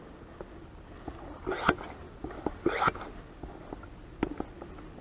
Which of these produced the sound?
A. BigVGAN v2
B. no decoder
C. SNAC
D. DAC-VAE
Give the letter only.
B